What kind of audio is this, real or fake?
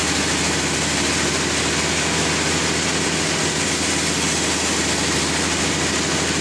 real